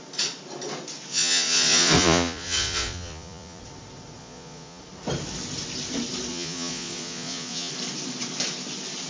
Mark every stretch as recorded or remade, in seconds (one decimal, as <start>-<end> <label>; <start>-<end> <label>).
0.0-1.1 recorded; 1.1-3.6 remade; 3.6-4.2 recorded; 4.2-4.8 remade; 4.8-6.3 recorded; 6.3-7.7 remade; 7.7-9.1 recorded